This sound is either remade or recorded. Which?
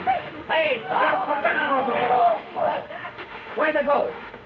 remade